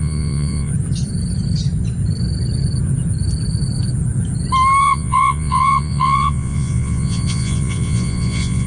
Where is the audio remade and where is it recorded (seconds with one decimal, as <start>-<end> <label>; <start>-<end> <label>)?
0.0-0.7 remade; 0.7-4.8 recorded; 4.8-8.7 remade